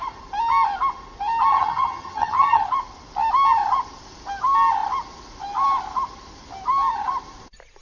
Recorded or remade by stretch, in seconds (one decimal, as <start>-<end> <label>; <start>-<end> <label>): 0.0-1.5 recorded; 1.5-2.6 remade; 2.6-7.8 recorded